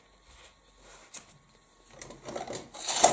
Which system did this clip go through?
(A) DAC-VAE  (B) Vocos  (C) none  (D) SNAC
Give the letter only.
C